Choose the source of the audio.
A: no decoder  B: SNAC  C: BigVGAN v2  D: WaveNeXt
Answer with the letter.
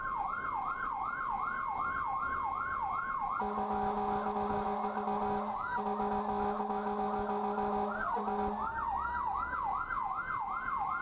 A